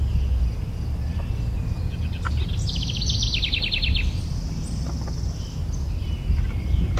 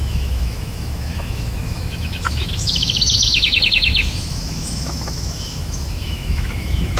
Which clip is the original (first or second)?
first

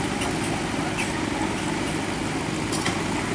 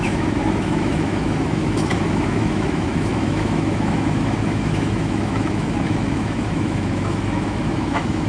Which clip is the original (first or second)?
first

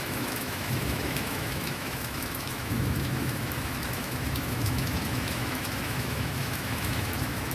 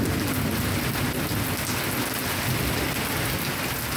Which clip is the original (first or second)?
second